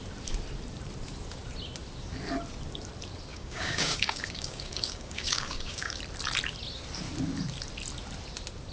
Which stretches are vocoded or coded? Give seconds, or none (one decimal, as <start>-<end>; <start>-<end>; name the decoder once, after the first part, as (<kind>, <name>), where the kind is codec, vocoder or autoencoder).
3.3-6.0 (codec, DAC)